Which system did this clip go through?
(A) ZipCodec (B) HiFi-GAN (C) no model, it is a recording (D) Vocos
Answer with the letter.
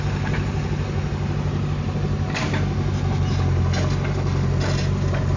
C